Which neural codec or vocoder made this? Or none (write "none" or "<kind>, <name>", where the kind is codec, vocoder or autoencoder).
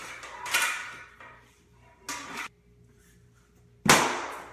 none